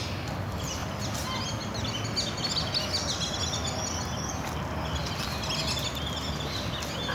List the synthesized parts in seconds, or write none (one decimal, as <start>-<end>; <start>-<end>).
none